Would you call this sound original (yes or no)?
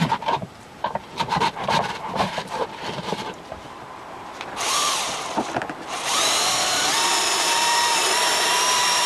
no